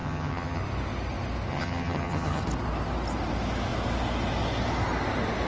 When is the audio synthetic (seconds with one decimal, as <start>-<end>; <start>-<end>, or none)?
0.0-0.6; 1.5-2.4